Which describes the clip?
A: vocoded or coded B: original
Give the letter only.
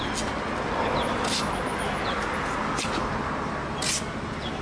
B